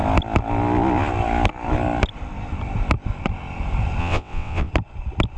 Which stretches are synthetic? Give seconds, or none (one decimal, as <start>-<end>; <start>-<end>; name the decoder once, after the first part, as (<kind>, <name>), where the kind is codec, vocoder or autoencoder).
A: 4.0-4.7 (vocoder, WaveNeXt)